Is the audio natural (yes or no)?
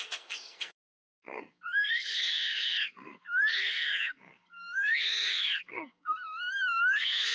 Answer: no